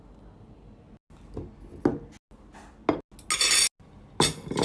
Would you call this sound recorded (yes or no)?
yes